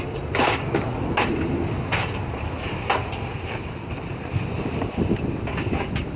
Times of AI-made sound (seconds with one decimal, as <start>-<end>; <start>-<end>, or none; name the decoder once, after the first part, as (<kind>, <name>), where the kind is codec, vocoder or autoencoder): none